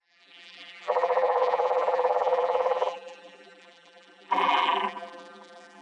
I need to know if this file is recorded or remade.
remade